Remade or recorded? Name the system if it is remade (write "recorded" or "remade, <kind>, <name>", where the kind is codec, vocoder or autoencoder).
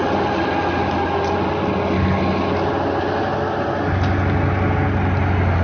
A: recorded